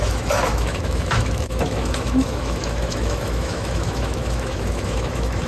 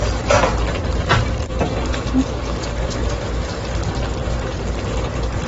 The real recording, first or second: second